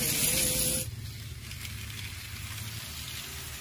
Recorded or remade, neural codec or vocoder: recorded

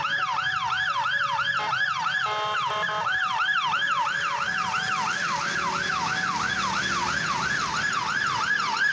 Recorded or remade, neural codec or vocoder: recorded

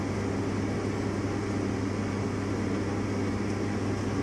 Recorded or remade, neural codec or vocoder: recorded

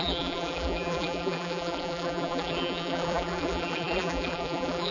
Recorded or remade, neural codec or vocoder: remade, vocoder, BigVGAN v2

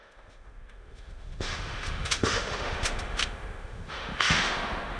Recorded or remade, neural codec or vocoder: remade, autoencoder, DAC-VAE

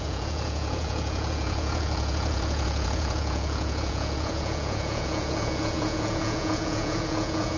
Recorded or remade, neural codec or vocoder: remade, vocoder, Vocos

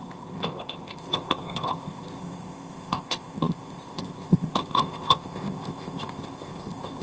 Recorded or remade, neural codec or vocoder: remade, codec, ZipCodec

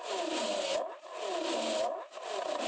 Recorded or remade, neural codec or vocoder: recorded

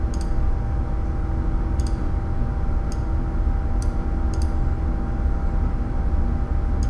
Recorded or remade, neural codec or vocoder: recorded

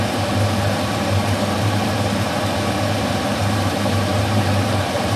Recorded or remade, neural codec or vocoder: remade, vocoder, BigVGAN v2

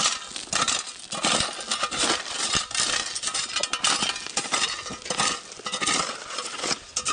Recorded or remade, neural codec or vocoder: recorded